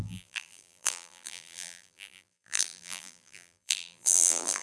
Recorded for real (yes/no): no